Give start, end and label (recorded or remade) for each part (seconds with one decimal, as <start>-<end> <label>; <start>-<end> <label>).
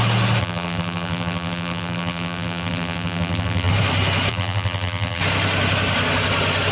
0.0-0.4 recorded; 0.4-3.7 remade; 3.7-4.3 recorded; 4.3-5.2 remade; 5.2-6.7 recorded